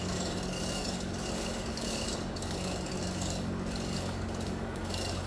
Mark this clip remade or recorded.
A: remade